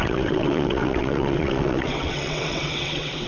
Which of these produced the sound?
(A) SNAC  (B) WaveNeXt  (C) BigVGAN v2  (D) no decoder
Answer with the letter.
B